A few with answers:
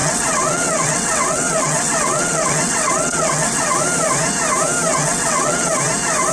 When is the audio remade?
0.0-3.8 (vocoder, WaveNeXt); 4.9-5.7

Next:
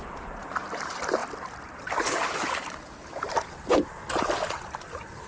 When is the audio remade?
none

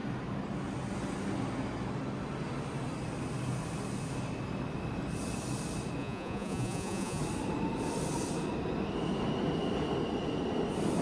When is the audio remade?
6.0-7.2 (vocoder, Vocos)

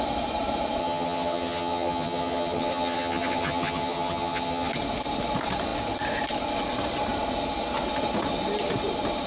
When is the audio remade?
0.8-4.7 (vocoder, HiFi-GAN)

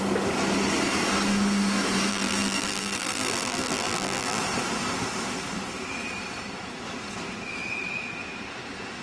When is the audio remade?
2.1-4.4 (vocoder, BigVGAN v2)

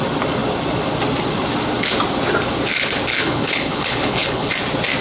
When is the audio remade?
3.1-4.5 (codec, HILCodec)